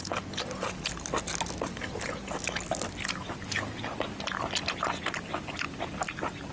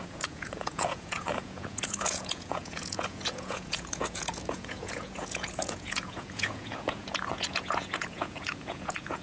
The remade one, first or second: second